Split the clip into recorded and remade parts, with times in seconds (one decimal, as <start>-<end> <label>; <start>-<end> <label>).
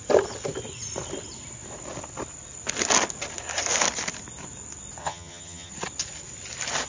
0.0-5.0 recorded; 5.0-5.7 remade; 5.7-6.9 recorded